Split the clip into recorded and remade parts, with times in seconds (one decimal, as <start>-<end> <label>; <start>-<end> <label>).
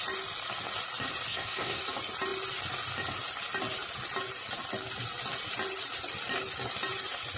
0.0-1.3 recorded; 1.3-1.8 remade; 1.8-7.4 recorded